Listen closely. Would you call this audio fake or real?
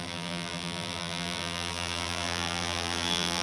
fake